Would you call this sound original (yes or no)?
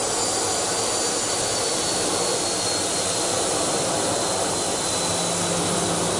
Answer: yes